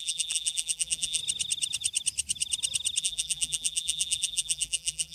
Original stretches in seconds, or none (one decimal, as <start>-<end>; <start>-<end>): 1.2-3.0

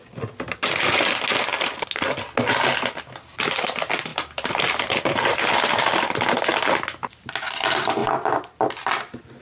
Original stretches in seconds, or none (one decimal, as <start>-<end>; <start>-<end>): 0.0-4.1; 5.9-8.0; 8.6-9.4

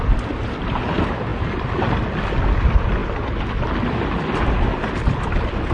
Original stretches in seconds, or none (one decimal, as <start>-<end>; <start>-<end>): 0.0-5.7